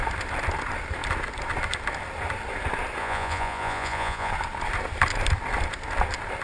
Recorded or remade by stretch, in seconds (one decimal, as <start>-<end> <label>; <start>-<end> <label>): 0.0-3.0 recorded; 3.0-4.3 remade; 4.3-6.4 recorded